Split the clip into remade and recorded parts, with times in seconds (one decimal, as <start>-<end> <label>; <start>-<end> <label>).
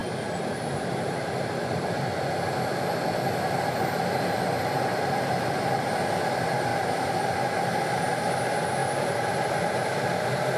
0.0-1.8 remade; 1.8-6.7 recorded; 6.7-7.2 remade; 7.2-10.6 recorded